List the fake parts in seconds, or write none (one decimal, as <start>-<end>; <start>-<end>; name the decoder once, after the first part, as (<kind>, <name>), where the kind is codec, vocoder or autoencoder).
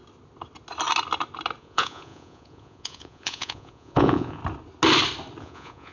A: 1.6-4.4 (vocoder, Vocos); 5.4-5.9